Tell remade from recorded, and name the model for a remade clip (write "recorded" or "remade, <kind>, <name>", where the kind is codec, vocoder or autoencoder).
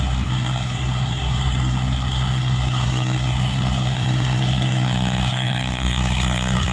remade, codec, SNAC